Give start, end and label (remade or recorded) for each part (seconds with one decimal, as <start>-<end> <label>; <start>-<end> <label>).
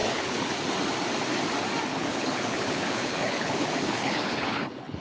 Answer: 0.0-0.5 remade; 0.5-1.9 recorded; 1.9-5.0 remade